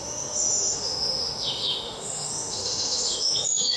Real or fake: fake